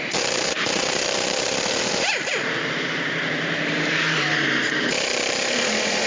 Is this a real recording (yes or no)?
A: no